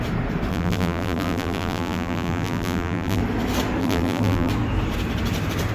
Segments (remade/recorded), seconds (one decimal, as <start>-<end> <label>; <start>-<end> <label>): 0.0-0.5 recorded; 0.5-3.2 remade; 3.2-3.8 recorded; 3.8-4.5 remade; 4.5-5.7 recorded